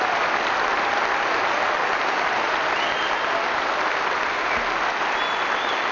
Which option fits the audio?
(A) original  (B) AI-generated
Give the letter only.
A